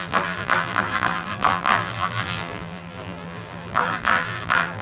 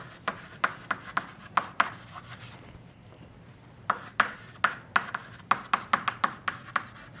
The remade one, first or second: first